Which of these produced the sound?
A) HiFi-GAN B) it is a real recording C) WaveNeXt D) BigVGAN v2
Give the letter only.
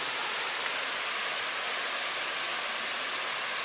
B